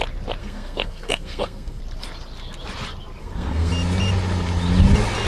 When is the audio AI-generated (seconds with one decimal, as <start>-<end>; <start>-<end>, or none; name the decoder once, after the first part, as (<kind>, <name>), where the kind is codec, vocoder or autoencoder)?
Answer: 0.4-1.8 (codec, SNAC); 3.2-3.7